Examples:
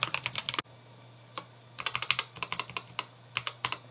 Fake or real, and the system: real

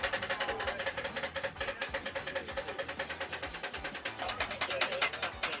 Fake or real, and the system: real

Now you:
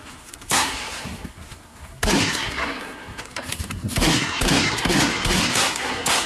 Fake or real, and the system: fake, codec, SNAC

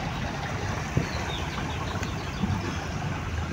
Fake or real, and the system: real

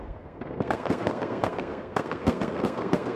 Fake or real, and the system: fake, codec, SNAC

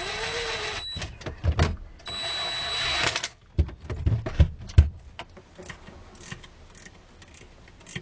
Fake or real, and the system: real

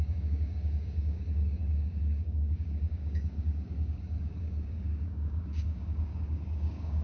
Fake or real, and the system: fake, codec, DAC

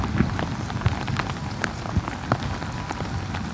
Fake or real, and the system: real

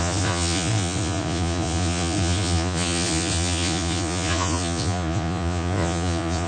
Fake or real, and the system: fake, vocoder, Vocos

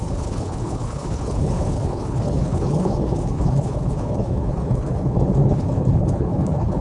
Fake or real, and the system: fake, codec, HILCodec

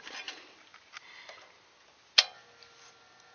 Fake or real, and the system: real